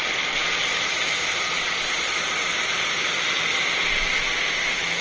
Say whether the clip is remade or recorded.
recorded